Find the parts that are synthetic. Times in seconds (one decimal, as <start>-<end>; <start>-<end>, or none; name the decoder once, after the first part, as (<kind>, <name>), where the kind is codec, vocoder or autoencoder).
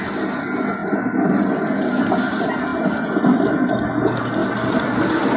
2.7-3.7 (vocoder, BigVGAN v2)